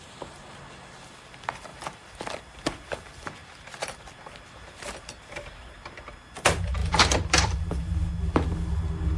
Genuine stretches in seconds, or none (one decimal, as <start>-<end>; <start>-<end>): 0.0-6.8; 7.7-9.2